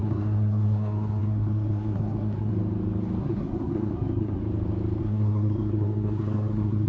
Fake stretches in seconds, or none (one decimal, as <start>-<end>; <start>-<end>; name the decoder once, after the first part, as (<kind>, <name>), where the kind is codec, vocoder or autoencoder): 0.0-2.5 (codec, SNAC); 3.2-4.4; 5.0-6.9